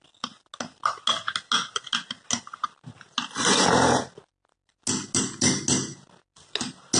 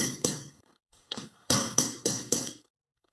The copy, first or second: second